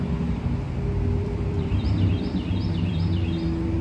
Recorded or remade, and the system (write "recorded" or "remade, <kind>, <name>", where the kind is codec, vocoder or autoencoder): remade, vocoder, BigVGAN v2